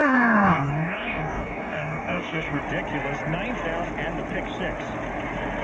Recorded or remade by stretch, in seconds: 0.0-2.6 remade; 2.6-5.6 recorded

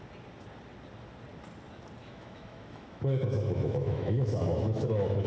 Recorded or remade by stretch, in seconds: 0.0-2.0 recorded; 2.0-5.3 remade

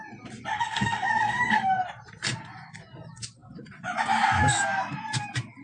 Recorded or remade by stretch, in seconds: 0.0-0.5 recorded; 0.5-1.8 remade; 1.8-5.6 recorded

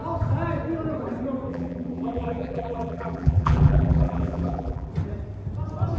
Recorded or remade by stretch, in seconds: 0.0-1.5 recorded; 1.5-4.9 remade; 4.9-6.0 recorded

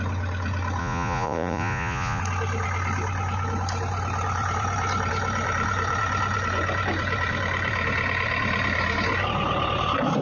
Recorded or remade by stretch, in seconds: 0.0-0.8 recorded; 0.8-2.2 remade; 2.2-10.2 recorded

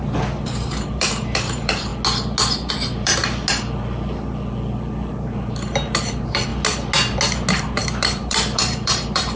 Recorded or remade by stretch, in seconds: 0.0-1.9 remade; 1.9-2.7 recorded; 2.7-3.2 remade; 3.2-5.1 recorded; 5.1-6.5 remade; 6.5-7.6 recorded; 7.6-9.4 remade

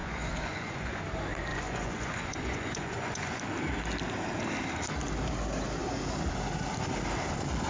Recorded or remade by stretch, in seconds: 0.0-1.0 remade; 1.0-1.5 recorded; 1.5-3.4 remade; 3.4-7.7 recorded

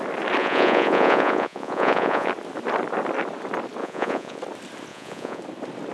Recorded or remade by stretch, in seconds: 0.0-0.4 recorded; 0.4-2.3 remade; 2.3-3.8 recorded; 3.8-4.4 remade; 4.4-4.9 recorded; 4.9-5.4 remade; 5.4-5.9 recorded